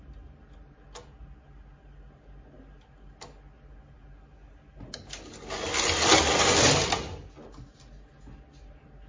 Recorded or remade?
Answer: recorded